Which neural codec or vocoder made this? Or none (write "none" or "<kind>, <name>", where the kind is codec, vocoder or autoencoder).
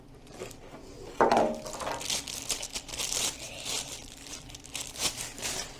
none